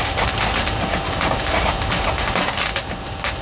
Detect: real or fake fake